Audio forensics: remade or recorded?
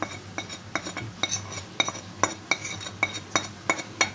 recorded